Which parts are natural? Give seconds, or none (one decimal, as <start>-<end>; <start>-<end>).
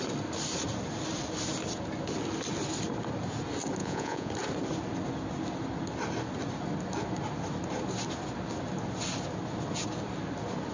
0.0-3.8; 4.3-10.7